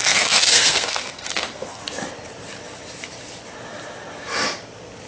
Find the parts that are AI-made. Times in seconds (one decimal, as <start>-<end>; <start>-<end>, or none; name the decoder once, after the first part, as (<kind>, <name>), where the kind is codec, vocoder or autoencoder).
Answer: 0.0-1.8 (codec, SNAC)